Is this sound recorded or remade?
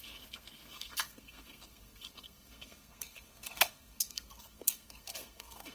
remade